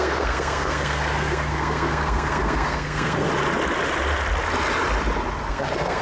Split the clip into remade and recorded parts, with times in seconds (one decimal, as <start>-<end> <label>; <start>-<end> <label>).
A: 0.0-3.3 remade; 3.3-5.5 recorded; 5.5-6.0 remade